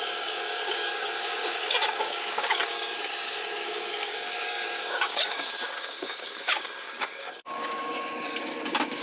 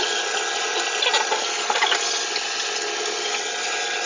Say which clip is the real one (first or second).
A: second